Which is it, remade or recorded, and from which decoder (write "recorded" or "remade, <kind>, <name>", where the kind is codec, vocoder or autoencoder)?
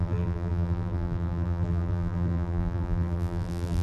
remade, vocoder, BigVGAN v2